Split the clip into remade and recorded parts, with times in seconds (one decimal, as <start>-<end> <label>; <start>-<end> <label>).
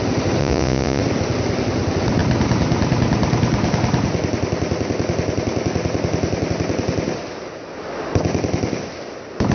0.0-0.4 recorded; 0.4-1.0 remade; 1.0-9.5 recorded